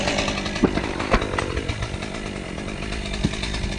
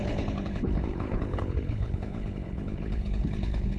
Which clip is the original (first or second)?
first